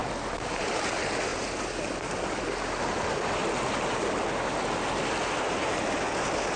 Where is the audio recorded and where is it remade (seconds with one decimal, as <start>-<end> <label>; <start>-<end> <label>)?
0.0-6.6 recorded